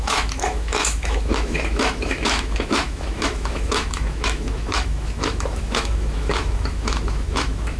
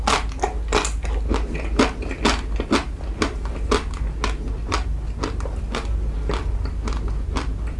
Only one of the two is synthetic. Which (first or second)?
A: first